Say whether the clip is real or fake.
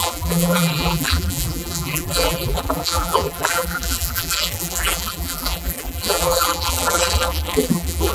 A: fake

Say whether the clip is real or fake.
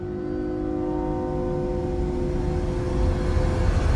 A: real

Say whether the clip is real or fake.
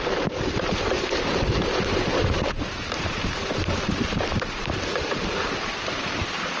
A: fake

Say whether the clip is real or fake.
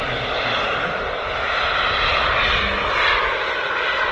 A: real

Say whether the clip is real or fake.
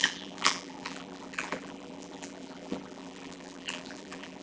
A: fake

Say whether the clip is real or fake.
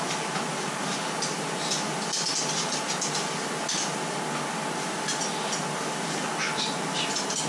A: real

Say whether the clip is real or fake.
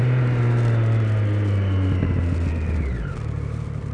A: real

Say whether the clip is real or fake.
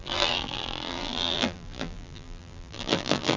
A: fake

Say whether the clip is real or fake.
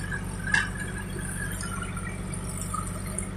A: real